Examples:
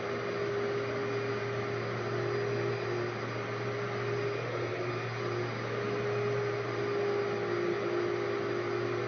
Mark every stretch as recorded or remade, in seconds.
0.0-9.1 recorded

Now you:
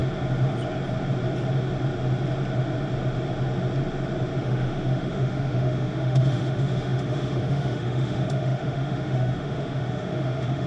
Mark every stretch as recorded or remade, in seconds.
0.0-4.4 recorded; 4.4-10.7 remade

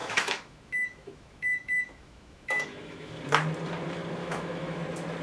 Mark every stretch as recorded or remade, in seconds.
0.0-3.1 remade; 3.1-4.2 recorded; 4.2-4.8 remade; 4.8-5.2 recorded

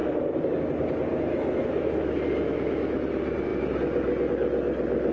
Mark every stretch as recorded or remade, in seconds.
0.0-1.1 recorded; 1.1-3.0 remade; 3.0-5.1 recorded

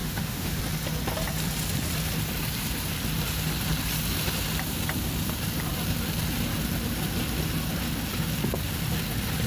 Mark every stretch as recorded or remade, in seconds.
0.0-0.6 remade; 0.6-9.5 recorded

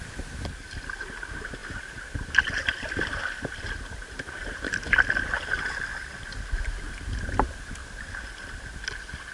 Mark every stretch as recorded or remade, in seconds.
0.0-9.3 recorded

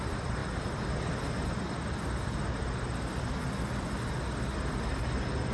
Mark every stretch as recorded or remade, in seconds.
0.0-5.5 recorded